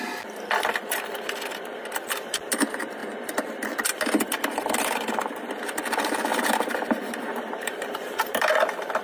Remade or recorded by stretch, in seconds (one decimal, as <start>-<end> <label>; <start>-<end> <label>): 0.0-6.3 recorded; 6.3-8.5 remade; 8.5-9.0 recorded